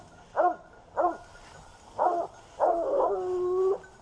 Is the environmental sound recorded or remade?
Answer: recorded